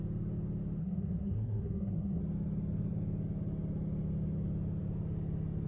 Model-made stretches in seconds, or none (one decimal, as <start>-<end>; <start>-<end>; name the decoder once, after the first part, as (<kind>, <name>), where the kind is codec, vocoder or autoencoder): 0.8-2.2 (codec, SNAC)